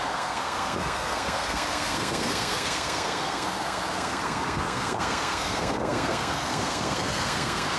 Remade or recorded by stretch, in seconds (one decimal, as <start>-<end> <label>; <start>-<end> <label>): 0.0-7.8 remade